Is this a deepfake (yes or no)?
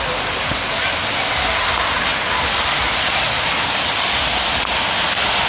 no